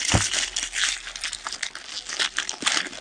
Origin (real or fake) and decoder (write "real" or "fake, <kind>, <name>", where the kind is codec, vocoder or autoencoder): real